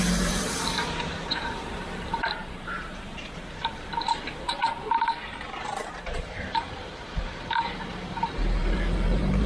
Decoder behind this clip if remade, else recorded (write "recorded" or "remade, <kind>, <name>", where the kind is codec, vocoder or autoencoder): remade, vocoder, BigVGAN v2